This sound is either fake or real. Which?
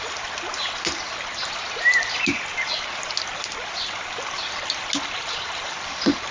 real